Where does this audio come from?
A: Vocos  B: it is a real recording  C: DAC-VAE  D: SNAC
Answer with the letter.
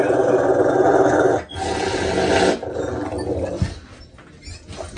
B